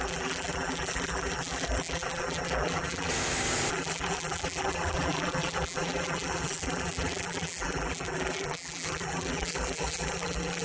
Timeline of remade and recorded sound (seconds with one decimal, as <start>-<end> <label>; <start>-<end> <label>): 0.0-3.1 remade; 3.1-3.7 recorded; 3.7-10.6 remade